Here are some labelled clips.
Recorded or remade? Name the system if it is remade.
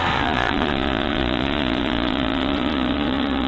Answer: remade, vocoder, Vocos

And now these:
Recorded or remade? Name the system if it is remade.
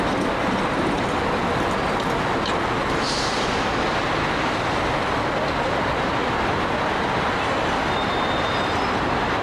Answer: recorded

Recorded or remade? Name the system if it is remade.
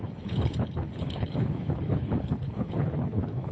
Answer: remade, codec, HILCodec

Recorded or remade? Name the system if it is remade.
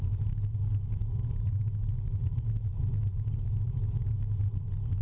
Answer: recorded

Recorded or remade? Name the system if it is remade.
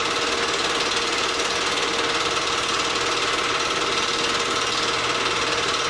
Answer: recorded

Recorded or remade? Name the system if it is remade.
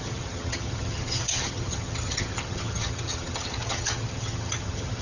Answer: remade, vocoder, HiFi-GAN